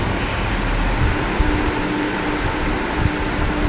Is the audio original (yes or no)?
yes